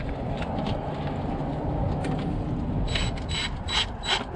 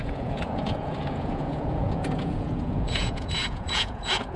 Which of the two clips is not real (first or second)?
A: second